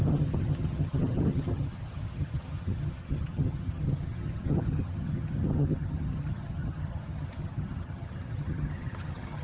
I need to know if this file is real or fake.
fake